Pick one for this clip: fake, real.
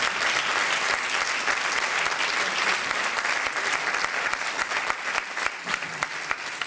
real